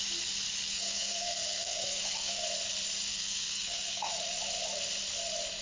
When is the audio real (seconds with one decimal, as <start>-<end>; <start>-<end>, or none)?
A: 0.0-0.7; 2.4-3.1; 4.1-5.6